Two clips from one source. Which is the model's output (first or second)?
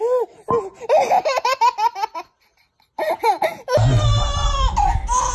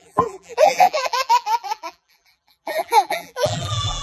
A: second